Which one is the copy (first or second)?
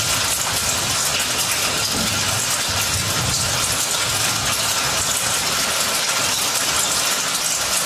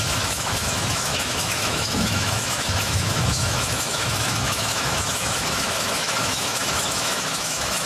second